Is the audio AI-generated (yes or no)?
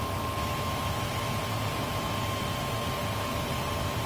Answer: no